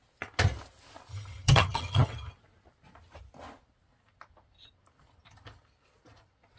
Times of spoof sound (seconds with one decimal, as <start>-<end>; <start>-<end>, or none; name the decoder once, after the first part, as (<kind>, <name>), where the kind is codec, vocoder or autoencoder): 1.1-2.3 (vocoder, HiFi-GAN)